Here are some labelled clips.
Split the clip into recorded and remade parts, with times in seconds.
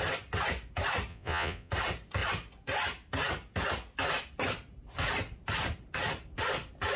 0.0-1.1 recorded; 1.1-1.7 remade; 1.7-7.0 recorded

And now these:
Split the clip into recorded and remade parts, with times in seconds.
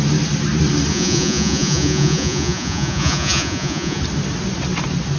0.0-0.9 recorded; 0.9-4.0 remade; 4.0-5.2 recorded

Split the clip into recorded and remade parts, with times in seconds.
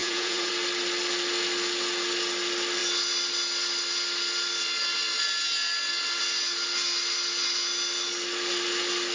0.0-0.5 remade; 0.5-9.1 recorded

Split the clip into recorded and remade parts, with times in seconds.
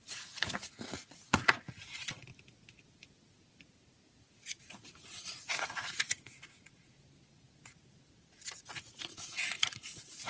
0.0-1.8 remade; 1.8-4.6 recorded; 4.6-6.9 remade; 6.9-9.1 recorded; 9.1-10.3 remade